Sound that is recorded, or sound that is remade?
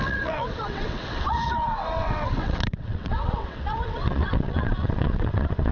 remade